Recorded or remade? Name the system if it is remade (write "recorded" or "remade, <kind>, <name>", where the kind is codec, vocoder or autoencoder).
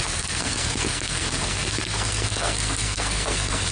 remade, codec, SNAC